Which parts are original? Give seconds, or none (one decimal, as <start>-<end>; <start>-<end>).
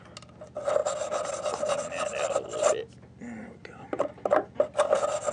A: 0.0-5.3